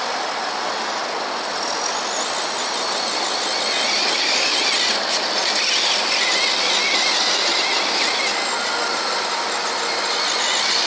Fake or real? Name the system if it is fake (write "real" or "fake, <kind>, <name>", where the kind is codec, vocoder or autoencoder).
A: real